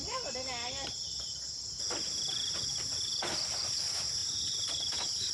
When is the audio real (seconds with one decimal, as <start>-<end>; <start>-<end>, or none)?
0.0-2.6; 3.1-3.7